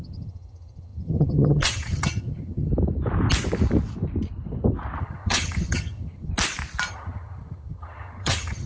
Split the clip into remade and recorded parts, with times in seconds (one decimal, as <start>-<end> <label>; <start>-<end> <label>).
0.0-2.7 remade; 2.7-5.0 recorded; 5.0-6.3 remade; 6.3-6.9 recorded; 6.9-8.7 remade